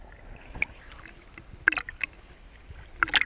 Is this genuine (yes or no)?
yes